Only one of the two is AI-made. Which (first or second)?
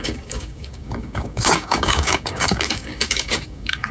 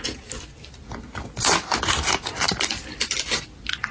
first